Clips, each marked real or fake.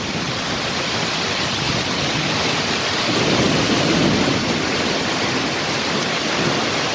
real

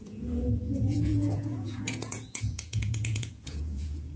fake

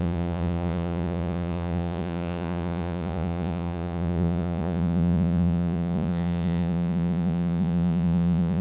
fake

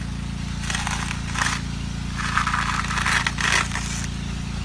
real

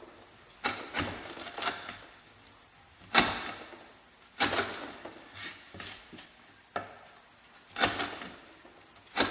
real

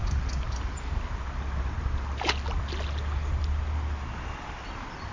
real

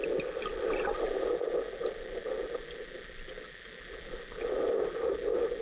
real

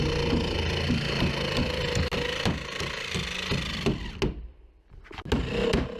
real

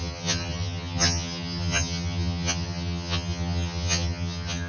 fake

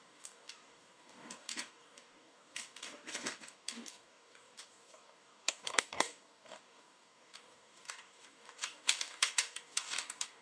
fake